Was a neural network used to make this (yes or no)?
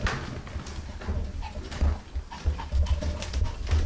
no